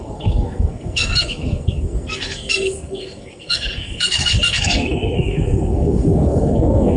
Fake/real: fake